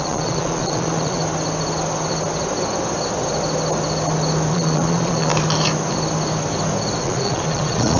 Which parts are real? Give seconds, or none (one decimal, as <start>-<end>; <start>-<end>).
1.2-4.5; 5.3-7.0